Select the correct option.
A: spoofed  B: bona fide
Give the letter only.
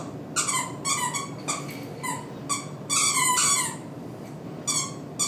B